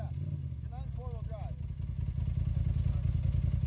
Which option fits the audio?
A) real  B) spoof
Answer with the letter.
A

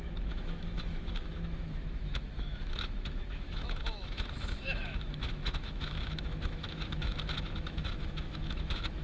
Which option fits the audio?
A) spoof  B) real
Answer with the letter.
A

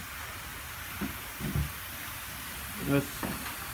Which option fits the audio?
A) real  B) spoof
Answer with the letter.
A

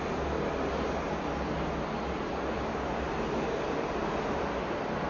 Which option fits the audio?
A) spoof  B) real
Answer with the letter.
B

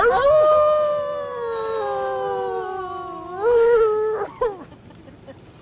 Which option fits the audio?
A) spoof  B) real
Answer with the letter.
B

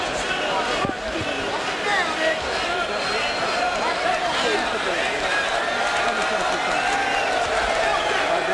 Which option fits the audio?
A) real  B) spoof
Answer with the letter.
A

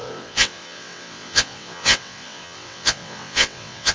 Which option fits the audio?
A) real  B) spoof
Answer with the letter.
B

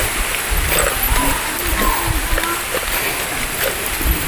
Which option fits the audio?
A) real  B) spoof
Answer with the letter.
A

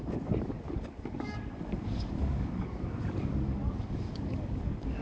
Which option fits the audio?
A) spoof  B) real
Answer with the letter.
A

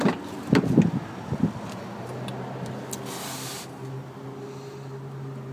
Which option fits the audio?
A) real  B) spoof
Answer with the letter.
A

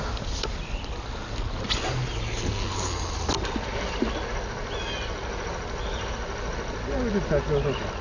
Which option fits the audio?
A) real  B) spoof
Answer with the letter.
A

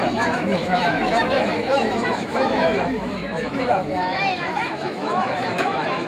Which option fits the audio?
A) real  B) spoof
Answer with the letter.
B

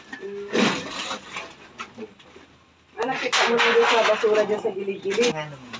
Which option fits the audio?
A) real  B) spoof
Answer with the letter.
A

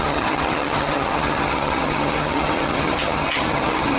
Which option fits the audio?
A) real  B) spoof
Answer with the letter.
B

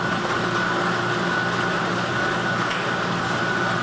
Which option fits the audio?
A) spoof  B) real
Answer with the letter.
B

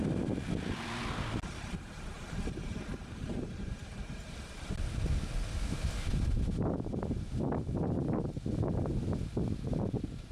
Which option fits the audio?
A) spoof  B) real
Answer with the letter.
B